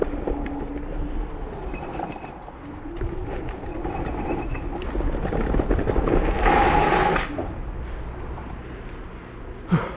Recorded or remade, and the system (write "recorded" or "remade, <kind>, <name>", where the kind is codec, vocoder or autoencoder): recorded